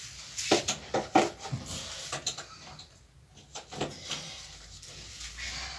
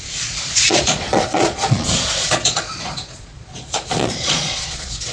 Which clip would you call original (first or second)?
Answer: first